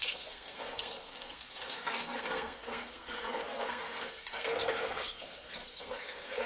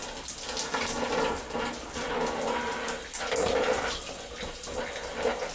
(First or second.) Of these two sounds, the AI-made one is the first